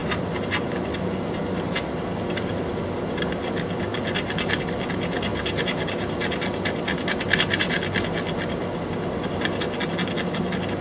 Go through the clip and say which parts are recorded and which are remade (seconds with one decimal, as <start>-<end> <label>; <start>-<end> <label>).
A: 0.0-10.8 recorded